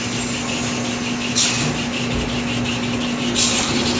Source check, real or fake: real